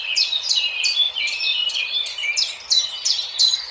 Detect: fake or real fake